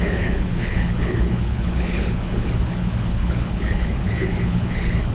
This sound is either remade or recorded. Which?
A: remade